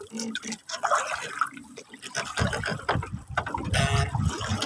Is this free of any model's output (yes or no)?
yes